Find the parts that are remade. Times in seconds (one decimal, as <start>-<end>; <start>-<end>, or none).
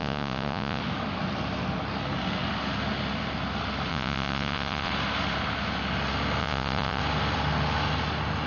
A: 0.0-0.8; 3.9-4.9; 6.4-7.0